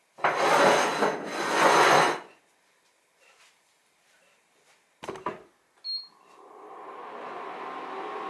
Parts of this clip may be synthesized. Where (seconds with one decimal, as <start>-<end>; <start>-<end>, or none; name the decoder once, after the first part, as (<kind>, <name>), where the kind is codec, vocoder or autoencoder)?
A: 1.3-2.4 (vocoder, Vocos)